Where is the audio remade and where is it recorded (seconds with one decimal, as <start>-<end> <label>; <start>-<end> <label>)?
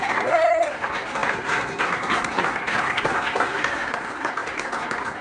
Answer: 0.0-5.2 remade